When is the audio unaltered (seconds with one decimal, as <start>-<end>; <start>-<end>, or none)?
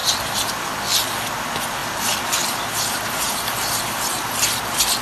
0.7-1.8; 4.0-5.0